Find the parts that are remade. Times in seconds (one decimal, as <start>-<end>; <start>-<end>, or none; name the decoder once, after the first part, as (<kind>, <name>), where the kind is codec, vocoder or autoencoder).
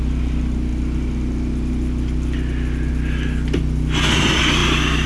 none